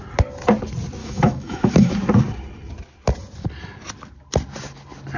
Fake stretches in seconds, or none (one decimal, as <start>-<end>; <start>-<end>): 1.0-1.9